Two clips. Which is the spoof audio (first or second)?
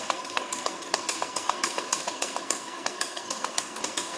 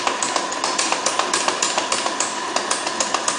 first